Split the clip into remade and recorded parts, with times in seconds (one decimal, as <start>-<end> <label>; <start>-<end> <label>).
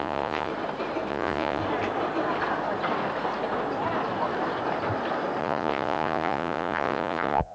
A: 0.0-0.5 remade; 0.5-1.1 recorded; 1.1-1.6 remade; 1.6-5.4 recorded; 5.4-7.5 remade